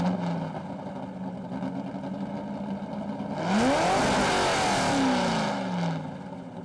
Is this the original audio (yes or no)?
yes